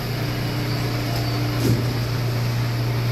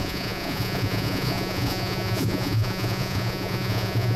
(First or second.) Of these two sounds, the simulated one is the second